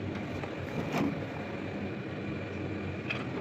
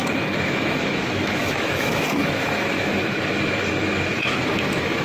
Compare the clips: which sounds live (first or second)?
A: first